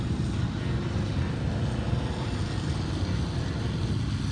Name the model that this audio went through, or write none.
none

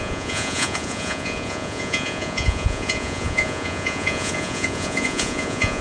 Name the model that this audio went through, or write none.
vocoder, Vocos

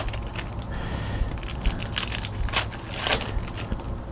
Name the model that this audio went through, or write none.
none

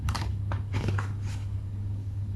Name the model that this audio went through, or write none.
codec, DAC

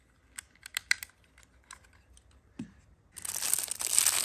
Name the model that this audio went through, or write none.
none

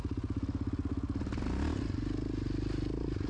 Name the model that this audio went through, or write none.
none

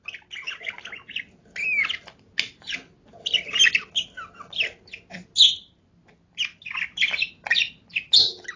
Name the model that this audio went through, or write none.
none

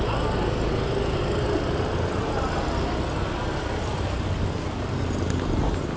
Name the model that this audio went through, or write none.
none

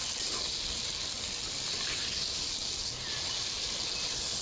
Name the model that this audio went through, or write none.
none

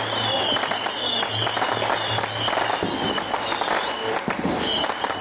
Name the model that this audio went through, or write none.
none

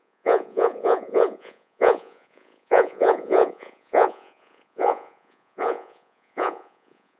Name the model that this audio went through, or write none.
vocoder, Vocos